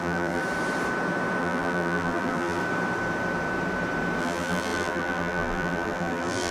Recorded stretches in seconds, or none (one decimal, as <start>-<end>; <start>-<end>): 0.4-1.4; 2.6-4.2